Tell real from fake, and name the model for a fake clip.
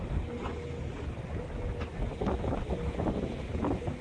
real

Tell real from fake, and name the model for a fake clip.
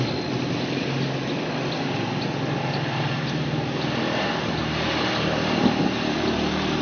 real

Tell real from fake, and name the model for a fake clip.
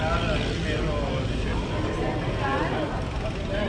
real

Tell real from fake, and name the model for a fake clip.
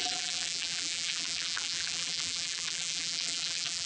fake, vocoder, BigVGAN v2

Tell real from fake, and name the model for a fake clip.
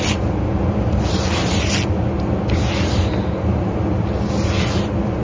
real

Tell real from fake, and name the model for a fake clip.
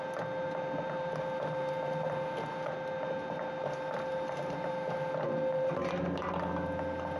real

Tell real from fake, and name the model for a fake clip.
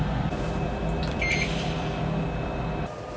fake, vocoder, BigVGAN v2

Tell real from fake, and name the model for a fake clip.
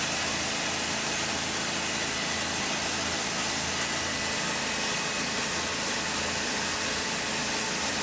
real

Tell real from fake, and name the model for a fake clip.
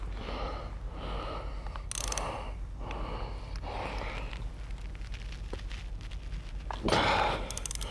real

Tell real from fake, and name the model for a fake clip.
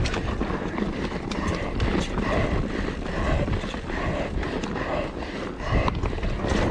real